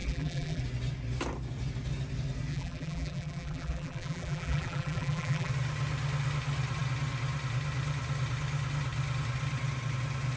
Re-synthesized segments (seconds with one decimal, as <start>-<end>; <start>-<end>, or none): 0.0-0.6; 2.5-5.5